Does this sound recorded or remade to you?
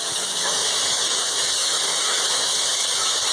remade